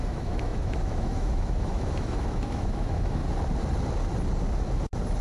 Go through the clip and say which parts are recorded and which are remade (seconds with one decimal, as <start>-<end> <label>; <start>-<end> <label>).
0.0-3.2 remade; 3.2-5.2 recorded